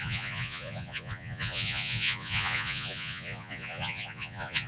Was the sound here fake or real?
fake